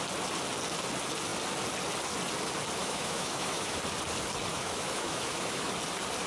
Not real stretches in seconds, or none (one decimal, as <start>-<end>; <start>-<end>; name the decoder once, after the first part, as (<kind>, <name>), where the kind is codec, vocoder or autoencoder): 2.8-3.8 (autoencoder, DAC-VAE); 4.5-5.7